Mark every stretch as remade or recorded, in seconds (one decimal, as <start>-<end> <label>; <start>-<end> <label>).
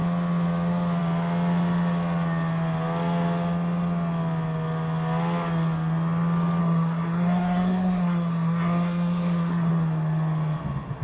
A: 0.0-6.6 recorded; 6.6-9.7 remade; 9.7-11.0 recorded